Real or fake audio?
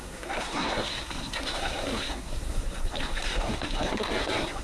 fake